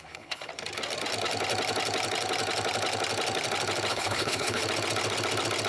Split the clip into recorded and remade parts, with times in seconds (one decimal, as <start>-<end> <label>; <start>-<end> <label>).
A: 0.0-0.5 remade; 0.5-3.9 recorded; 3.9-4.6 remade; 4.6-5.7 recorded